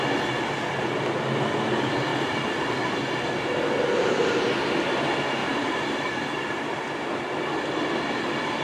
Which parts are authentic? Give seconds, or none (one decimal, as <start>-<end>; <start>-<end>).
0.0-5.4; 7.2-8.6